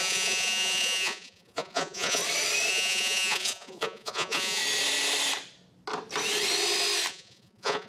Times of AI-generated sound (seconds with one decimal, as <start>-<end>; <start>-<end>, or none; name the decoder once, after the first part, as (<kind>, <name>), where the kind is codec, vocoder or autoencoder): 0.0-2.2 (vocoder, Vocos); 2.7-4.6; 7.1-7.9